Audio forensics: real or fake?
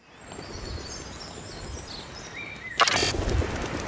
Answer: real